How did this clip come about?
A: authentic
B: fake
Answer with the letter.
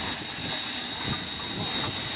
A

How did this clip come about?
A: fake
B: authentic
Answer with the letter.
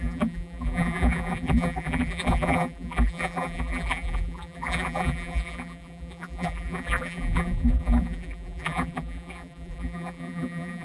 A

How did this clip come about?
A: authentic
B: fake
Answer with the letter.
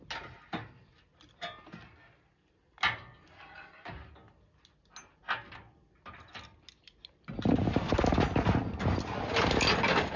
A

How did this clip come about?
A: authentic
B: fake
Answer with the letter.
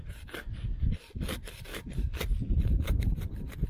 A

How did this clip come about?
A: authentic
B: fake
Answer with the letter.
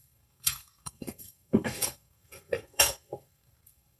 B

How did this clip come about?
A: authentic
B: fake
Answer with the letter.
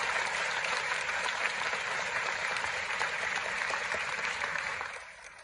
B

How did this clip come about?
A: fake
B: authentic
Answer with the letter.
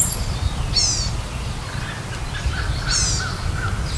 B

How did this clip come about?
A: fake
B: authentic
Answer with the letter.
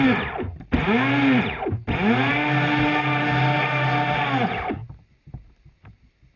B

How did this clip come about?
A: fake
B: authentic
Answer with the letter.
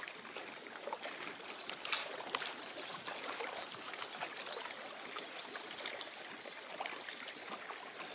B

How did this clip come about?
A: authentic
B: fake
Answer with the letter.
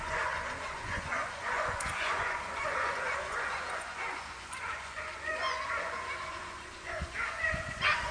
B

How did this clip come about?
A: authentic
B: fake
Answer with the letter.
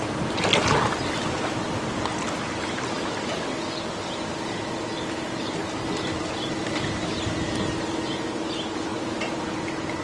A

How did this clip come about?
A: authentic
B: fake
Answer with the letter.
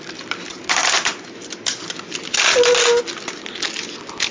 A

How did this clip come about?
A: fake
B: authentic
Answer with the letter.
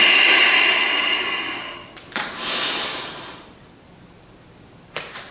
B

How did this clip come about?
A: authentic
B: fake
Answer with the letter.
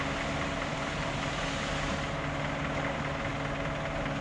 A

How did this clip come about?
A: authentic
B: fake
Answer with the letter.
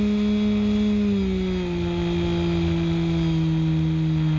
A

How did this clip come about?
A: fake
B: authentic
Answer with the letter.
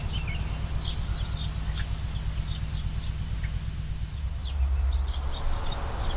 B